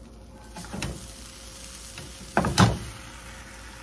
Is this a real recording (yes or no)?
yes